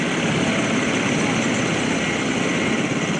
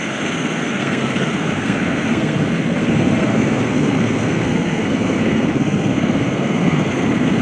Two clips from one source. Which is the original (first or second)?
first